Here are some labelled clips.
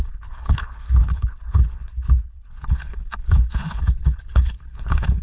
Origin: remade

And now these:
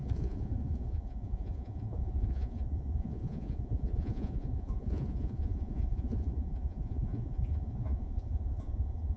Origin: remade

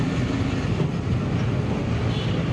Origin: recorded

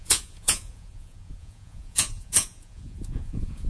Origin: remade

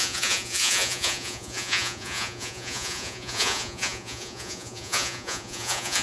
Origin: remade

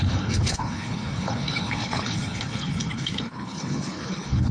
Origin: remade